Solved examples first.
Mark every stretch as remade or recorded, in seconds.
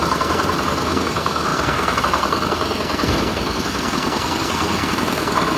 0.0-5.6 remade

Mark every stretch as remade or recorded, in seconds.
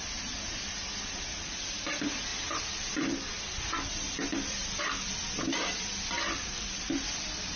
0.0-7.6 recorded